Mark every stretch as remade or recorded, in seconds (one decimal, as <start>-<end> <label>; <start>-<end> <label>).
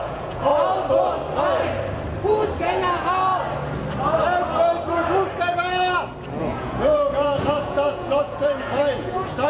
0.0-0.5 remade; 0.5-2.6 recorded; 2.6-3.3 remade; 3.3-6.4 recorded; 6.4-9.5 remade